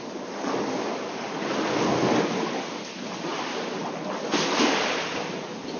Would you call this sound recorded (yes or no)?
yes